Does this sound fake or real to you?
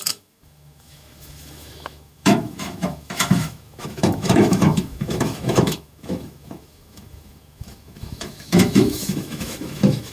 fake